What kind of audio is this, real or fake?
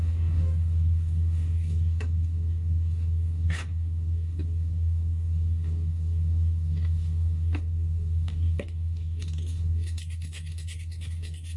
fake